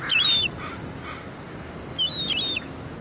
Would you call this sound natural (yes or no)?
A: yes